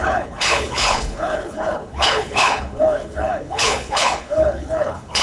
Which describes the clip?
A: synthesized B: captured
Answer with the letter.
A